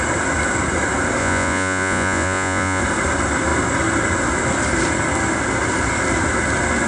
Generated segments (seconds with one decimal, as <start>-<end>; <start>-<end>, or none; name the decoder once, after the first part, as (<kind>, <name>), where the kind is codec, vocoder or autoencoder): 1.2-2.8 (vocoder, Vocos)